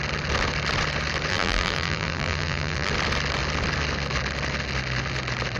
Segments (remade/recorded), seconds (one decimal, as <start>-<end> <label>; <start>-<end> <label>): 0.0-1.3 recorded; 1.3-2.9 remade; 2.9-5.6 recorded